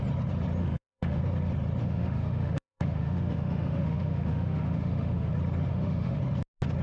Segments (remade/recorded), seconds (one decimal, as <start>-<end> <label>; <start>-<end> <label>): 0.0-0.6 recorded; 0.6-1.2 remade; 1.2-1.8 recorded; 1.8-5.3 remade; 5.3-5.7 recorded; 5.7-6.2 remade; 6.2-6.8 recorded